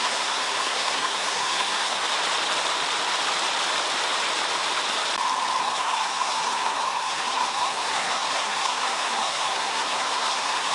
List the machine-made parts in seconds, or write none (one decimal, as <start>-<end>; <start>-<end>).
0.0-2.0; 5.6-10.7